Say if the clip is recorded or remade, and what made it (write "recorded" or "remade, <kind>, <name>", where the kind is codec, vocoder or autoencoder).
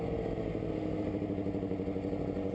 recorded